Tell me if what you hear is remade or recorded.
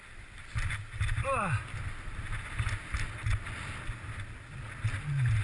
recorded